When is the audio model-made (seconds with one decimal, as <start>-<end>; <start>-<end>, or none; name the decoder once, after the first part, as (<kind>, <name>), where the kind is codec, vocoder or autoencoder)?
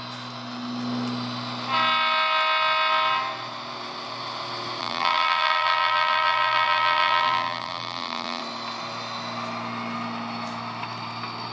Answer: 4.8-8.4 (vocoder, BigVGAN v2)